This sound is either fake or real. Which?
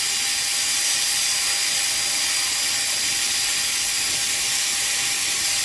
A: real